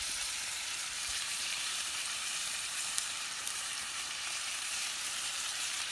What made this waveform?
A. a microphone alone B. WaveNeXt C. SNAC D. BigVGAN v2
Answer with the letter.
D